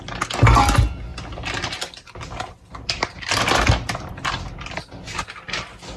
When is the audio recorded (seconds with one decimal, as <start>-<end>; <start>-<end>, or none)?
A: 0.0-1.1; 4.5-6.0